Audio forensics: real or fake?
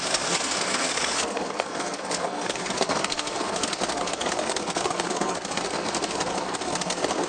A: fake